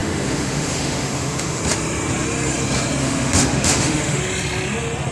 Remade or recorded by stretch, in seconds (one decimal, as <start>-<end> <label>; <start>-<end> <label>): 0.0-1.6 remade; 1.6-3.0 recorded; 3.0-4.2 remade; 4.2-5.1 recorded